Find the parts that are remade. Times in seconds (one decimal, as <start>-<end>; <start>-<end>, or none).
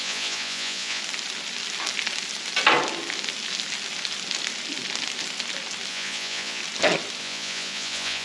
0.0-1.0; 5.9-6.6; 7.2-8.2